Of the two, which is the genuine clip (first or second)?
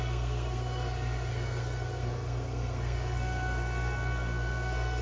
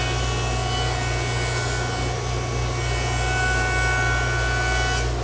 second